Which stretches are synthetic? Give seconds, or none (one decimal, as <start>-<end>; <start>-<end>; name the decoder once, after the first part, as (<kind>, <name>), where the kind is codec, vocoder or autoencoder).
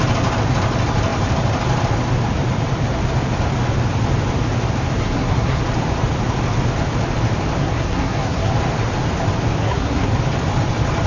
5.0-5.6 (codec, SNAC); 7.6-8.5; 9.6-10.1